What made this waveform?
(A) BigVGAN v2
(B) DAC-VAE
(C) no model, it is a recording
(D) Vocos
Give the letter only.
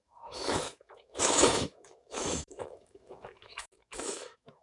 B